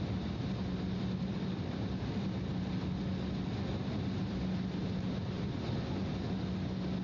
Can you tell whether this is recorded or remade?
recorded